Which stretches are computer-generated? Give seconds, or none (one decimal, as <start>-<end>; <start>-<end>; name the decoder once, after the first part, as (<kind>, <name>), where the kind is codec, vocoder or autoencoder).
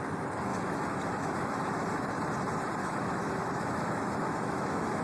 0.5-2.1 (autoencoder, DAC-VAE); 2.8-5.0